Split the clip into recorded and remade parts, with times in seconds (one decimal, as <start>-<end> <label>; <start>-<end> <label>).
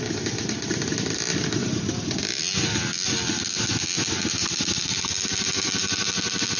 0.0-1.3 recorded; 1.3-2.4 remade; 2.4-4.8 recorded; 4.8-5.8 remade; 5.8-6.6 recorded